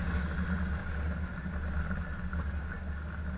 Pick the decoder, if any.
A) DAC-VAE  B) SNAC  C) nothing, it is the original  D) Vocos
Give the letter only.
C